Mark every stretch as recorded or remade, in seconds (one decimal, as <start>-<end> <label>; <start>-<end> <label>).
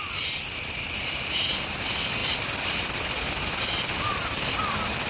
0.0-5.1 recorded